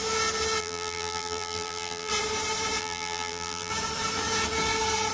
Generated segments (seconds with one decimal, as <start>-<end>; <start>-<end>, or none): 0.6-2.1; 2.8-3.7